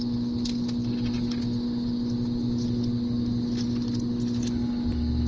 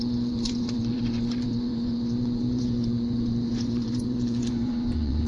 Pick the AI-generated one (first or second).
second